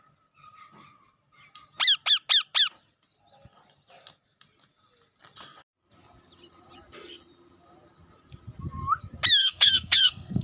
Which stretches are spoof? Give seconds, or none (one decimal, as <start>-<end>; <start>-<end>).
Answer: 9.4-10.4